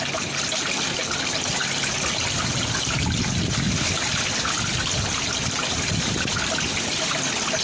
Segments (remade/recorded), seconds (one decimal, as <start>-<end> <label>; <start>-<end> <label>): 0.0-7.6 recorded